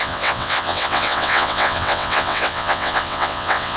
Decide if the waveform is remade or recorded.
remade